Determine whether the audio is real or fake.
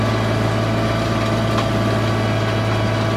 real